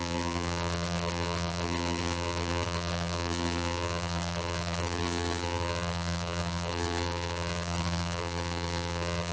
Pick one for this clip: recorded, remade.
remade